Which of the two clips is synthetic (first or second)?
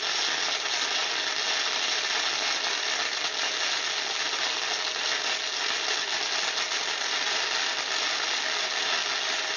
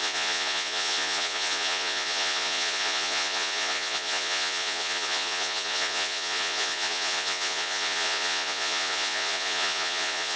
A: second